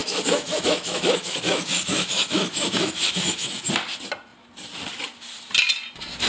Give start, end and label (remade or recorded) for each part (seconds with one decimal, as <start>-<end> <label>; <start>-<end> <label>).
0.0-3.7 remade; 3.7-6.3 recorded

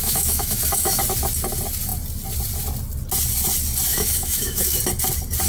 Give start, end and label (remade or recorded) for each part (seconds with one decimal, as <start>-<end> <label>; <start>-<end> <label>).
0.0-1.0 remade; 1.0-3.9 recorded; 3.9-4.8 remade; 4.8-5.5 recorded

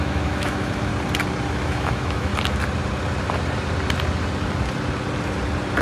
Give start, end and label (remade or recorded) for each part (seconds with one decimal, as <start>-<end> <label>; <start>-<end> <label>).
0.0-0.9 remade; 0.9-1.5 recorded; 1.5-2.3 remade; 2.3-5.8 recorded

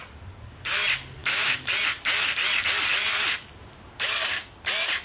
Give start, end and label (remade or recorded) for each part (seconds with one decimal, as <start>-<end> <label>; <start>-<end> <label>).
0.0-1.2 recorded; 1.2-1.7 remade; 1.7-5.0 recorded

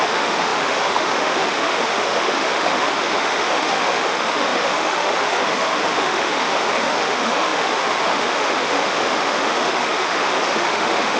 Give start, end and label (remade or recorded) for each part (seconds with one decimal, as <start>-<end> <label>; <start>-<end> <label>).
0.0-11.2 remade

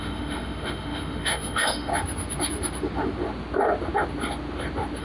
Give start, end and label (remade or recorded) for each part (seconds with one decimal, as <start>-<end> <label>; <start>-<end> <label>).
0.0-1.9 remade; 1.9-5.0 recorded

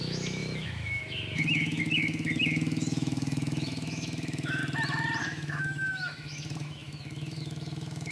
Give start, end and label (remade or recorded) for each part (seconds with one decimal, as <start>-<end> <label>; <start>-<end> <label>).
0.0-4.6 remade; 4.6-5.2 recorded; 5.2-8.1 remade

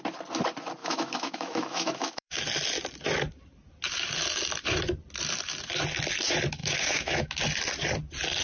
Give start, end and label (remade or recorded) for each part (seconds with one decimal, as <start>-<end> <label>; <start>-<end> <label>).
0.0-0.8 recorded; 0.8-2.4 remade; 2.4-6.6 recorded; 6.6-7.4 remade; 7.4-8.4 recorded